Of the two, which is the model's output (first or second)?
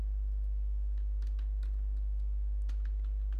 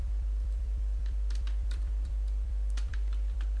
second